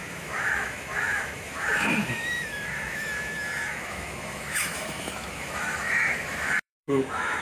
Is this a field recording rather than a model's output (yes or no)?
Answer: no